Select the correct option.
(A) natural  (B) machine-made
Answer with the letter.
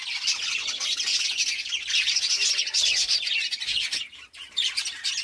A